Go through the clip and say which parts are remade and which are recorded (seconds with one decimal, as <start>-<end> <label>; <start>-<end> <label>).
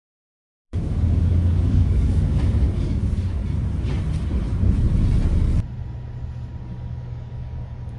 0.0-3.4 remade; 3.4-6.6 recorded; 6.6-8.0 remade